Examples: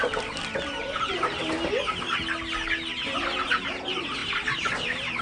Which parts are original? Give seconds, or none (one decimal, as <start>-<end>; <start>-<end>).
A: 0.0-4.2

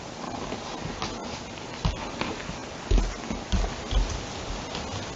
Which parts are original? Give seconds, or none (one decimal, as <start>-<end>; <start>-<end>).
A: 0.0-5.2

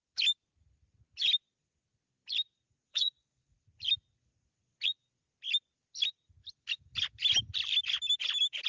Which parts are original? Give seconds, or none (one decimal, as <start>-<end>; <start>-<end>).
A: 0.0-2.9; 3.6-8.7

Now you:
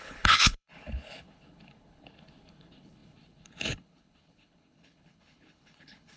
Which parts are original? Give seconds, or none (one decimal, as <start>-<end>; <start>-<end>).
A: none